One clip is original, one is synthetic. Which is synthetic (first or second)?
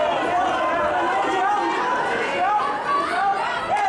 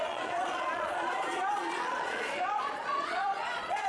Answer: second